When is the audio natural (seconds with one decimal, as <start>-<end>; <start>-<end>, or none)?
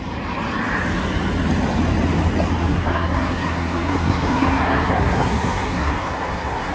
0.0-2.6